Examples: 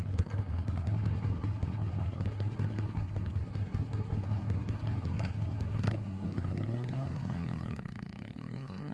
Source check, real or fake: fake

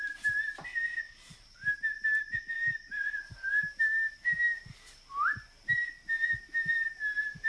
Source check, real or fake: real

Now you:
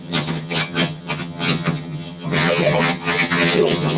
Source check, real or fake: fake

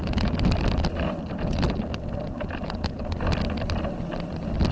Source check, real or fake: real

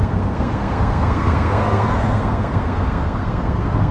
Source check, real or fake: fake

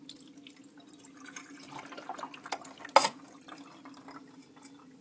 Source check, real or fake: real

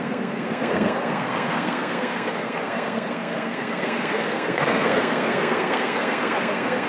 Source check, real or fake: fake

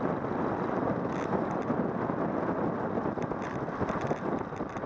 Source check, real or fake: real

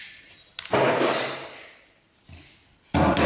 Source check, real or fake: real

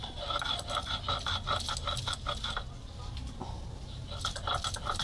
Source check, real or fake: real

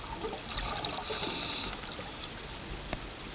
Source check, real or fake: real